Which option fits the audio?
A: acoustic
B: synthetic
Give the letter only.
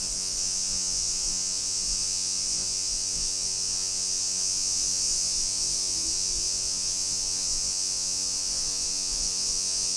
B